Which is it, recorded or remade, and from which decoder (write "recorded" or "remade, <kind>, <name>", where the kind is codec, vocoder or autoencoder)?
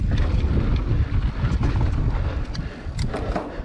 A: recorded